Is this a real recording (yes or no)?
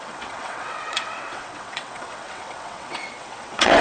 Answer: no